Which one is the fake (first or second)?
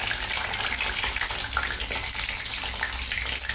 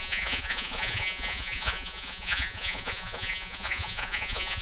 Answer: second